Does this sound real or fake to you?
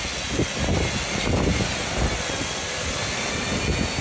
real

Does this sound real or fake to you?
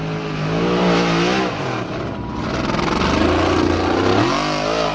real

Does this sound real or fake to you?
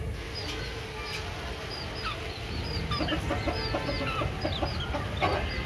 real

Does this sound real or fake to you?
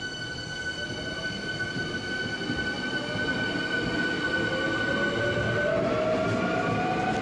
real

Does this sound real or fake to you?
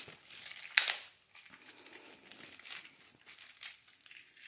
real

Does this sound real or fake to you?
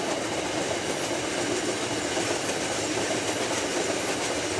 real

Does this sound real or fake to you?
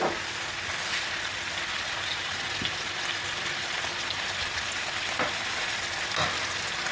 real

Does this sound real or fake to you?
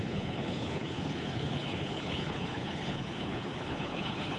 fake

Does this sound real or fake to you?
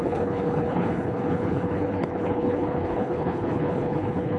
fake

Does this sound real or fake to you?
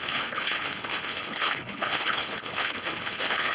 fake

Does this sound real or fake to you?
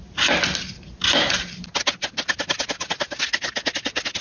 real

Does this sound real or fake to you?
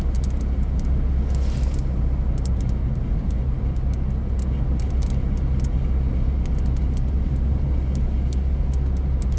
real